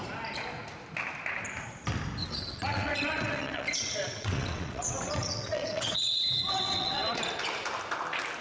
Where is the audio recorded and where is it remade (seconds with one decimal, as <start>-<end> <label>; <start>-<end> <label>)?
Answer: 0.0-2.2 recorded; 2.2-7.2 remade; 7.2-8.4 recorded